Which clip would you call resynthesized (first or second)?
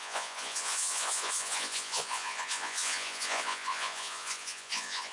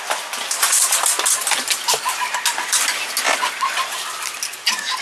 first